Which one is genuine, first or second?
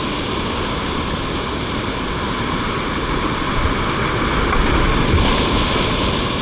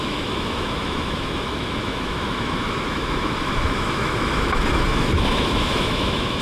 first